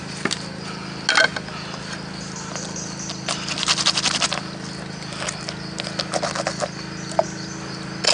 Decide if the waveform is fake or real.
real